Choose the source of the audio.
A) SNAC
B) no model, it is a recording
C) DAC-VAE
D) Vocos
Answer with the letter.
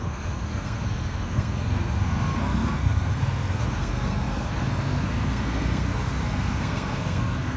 A